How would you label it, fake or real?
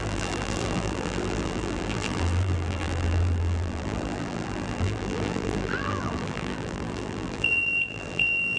fake